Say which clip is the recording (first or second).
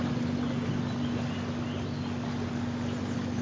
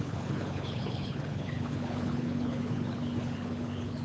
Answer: first